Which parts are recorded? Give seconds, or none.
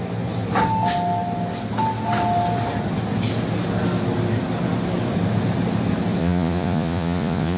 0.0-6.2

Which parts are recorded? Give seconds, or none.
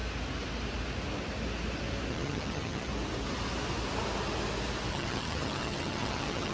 0.0-2.1; 2.9-4.9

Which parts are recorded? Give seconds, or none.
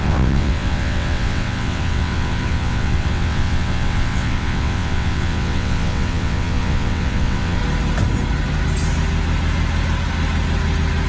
7.6-11.1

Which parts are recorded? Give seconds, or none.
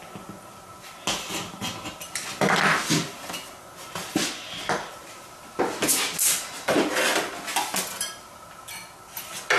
0.0-9.6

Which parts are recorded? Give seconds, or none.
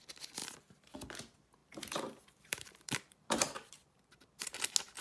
0.0-0.4; 0.9-1.6; 4.6-5.0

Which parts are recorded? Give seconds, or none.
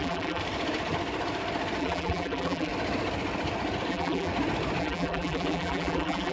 0.4-1.8; 2.7-3.9; 4.3-4.8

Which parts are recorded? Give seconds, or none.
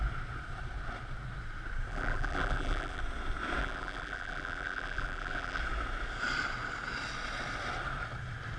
0.0-1.9; 3.0-3.6; 5.6-8.6